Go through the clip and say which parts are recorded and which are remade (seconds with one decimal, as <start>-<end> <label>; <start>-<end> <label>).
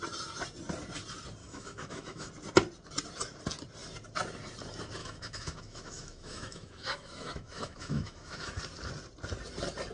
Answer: 0.0-1.4 recorded; 1.4-2.3 remade; 2.3-5.0 recorded; 5.0-8.6 remade; 8.6-9.9 recorded